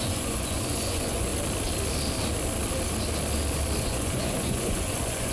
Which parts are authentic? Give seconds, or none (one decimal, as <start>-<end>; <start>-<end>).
1.3-3.8